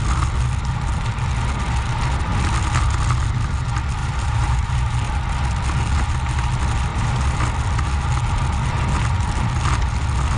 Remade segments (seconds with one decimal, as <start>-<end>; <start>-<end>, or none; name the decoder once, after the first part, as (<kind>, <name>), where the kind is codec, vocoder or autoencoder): 4.0-4.9 (vocoder, BigVGAN v2); 6.9-7.5

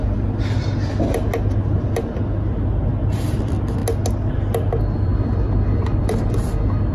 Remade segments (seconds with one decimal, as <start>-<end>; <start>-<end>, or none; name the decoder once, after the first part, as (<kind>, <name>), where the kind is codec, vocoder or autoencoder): 3.2-3.8 (vocoder, BigVGAN v2); 4.3-5.1; 6.0-6.9